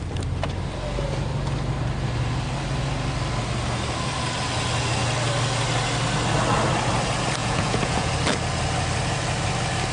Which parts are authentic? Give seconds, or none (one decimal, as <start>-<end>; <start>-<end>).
0.0-7.4; 8.1-9.9